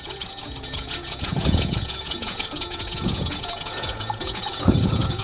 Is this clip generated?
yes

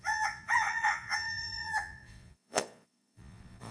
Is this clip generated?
yes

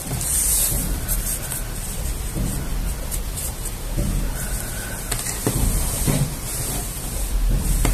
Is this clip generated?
no